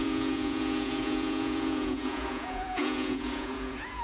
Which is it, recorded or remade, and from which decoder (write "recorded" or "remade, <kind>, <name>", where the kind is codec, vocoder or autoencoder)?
remade, vocoder, Vocos